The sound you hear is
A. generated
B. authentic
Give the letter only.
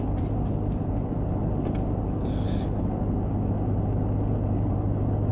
B